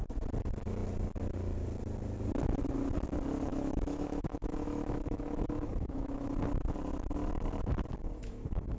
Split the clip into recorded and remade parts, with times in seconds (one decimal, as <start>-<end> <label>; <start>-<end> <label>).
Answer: 0.0-3.5 recorded; 3.5-6.3 remade; 6.3-8.0 recorded; 8.0-8.8 remade

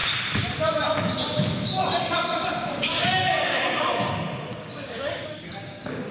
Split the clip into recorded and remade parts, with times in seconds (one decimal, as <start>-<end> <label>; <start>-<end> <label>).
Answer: 0.0-2.9 recorded; 2.9-4.1 remade; 4.1-4.5 recorded; 4.5-6.1 remade

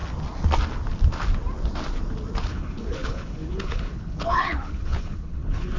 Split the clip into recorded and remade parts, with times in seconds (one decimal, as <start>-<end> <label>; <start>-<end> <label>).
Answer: 0.0-2.4 recorded; 2.4-5.8 remade

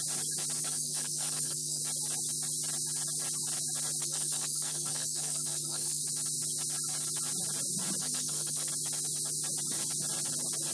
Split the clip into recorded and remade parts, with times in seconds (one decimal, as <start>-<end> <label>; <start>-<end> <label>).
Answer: 0.0-0.6 recorded; 0.6-1.8 remade; 1.8-4.0 recorded; 4.0-6.0 remade; 6.0-8.0 recorded; 8.0-8.7 remade; 8.7-10.7 recorded

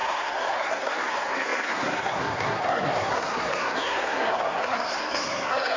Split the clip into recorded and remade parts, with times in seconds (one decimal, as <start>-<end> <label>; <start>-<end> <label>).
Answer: 0.0-5.8 remade

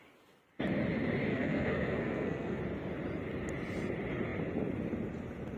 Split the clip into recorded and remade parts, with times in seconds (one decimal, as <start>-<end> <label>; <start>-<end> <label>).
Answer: 0.0-1.3 recorded; 1.3-2.6 remade; 2.6-5.6 recorded

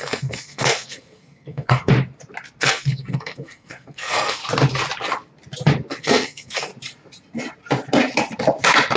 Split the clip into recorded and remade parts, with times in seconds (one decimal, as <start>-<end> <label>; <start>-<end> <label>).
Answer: 0.0-1.9 remade; 1.9-2.6 recorded; 2.6-4.4 remade; 4.4-6.0 recorded; 6.0-6.7 remade; 6.7-9.0 recorded